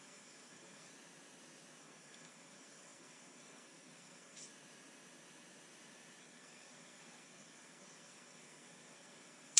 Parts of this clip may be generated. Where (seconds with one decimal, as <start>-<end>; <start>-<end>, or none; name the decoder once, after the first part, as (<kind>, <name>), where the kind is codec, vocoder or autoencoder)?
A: 0.0-0.9 (codec, SNAC); 1.8-4.5; 6.2-9.6